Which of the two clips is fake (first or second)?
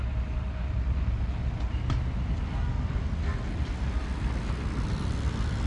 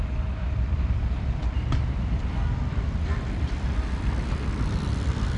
second